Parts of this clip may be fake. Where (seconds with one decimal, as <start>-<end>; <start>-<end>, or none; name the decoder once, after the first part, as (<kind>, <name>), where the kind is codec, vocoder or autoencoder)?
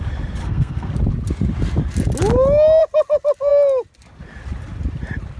0.4-0.9 (codec, SNAC)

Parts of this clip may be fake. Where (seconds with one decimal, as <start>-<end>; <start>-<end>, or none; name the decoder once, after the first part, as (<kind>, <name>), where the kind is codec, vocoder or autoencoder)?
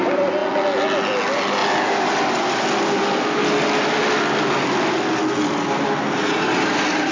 none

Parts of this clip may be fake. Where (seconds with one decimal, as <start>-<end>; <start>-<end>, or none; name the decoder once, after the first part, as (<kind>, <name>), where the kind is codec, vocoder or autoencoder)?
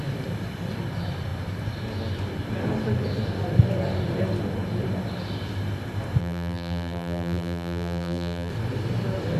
6.2-8.5 (vocoder, BigVGAN v2)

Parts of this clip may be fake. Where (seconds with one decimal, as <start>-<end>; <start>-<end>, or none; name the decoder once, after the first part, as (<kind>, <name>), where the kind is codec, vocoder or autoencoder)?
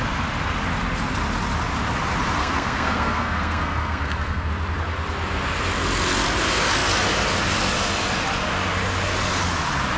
2.4-4.5 (codec, SNAC)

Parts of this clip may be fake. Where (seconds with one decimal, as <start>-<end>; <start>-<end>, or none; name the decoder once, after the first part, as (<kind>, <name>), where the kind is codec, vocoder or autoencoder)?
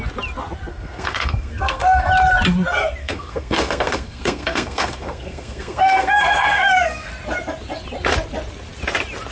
0.7-2.1 (codec, SNAC); 3.0-7.1